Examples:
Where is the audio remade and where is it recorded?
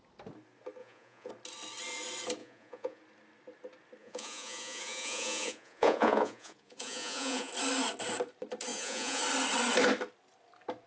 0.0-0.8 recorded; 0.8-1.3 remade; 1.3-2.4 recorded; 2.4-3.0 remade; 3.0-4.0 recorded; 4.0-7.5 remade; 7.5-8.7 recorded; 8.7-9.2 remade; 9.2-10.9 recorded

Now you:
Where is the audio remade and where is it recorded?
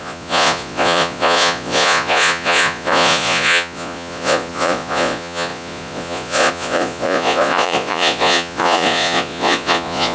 0.0-10.1 remade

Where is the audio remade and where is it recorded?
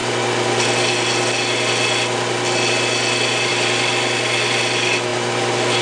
0.0-5.8 recorded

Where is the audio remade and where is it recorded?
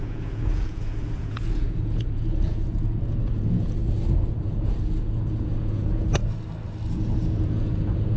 0.0-3.8 remade; 3.8-4.3 recorded; 4.3-6.2 remade; 6.2-6.9 recorded; 6.9-8.2 remade